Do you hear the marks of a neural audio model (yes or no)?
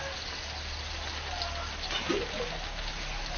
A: no